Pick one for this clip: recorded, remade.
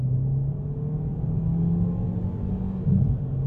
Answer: recorded